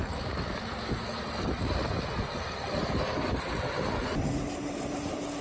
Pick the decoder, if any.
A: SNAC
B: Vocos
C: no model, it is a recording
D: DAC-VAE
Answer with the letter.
C